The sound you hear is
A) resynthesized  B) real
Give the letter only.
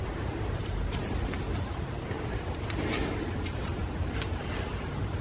A